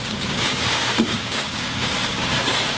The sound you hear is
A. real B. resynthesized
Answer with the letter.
B